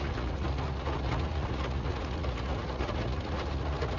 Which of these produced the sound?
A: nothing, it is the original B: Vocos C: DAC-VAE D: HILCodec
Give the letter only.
B